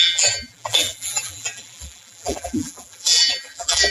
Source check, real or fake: fake